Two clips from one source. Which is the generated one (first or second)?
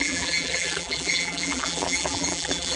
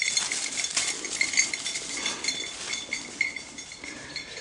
first